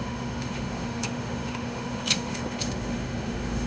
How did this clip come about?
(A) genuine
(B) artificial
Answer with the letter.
B